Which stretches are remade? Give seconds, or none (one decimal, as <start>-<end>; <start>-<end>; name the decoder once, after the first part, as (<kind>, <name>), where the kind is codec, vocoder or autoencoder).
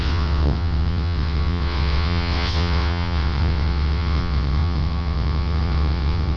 0.0-6.4 (vocoder, WaveNeXt)